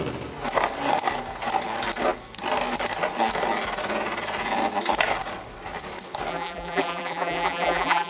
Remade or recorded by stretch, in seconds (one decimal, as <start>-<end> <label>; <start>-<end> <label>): 0.0-6.3 recorded; 6.3-8.1 remade